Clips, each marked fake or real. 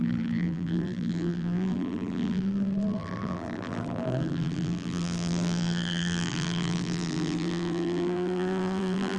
fake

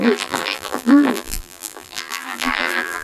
fake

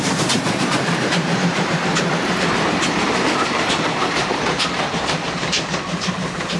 fake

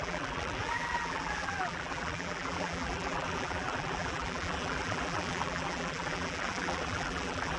fake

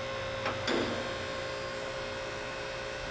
real